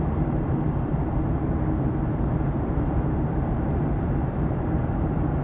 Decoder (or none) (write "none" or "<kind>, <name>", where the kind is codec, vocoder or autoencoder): vocoder, BigVGAN v2